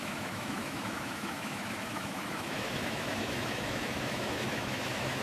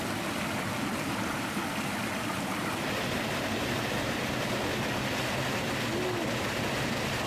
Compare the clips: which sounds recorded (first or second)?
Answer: second